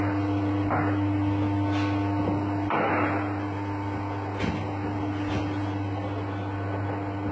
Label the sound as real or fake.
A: real